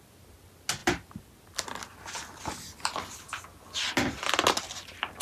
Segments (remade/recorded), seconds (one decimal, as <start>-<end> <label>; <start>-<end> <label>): 0.0-5.2 recorded